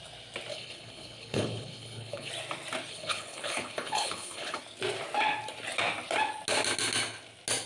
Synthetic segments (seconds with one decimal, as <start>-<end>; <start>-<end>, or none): 0.5-2.3; 2.9-4.6